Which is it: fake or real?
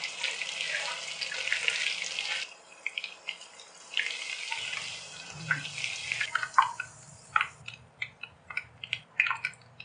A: real